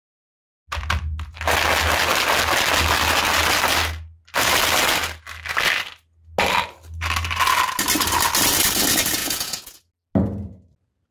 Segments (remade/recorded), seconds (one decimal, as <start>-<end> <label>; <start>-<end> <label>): 0.0-9.2 recorded; 9.2-9.8 remade; 9.8-11.1 recorded